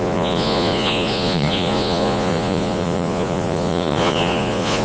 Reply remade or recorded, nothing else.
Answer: remade